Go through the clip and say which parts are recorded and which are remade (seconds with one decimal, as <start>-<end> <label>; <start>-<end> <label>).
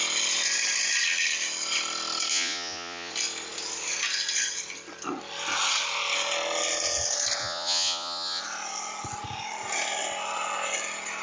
0.0-2.3 recorded; 2.3-3.1 remade; 3.1-7.4 recorded; 7.4-8.4 remade; 8.4-11.2 recorded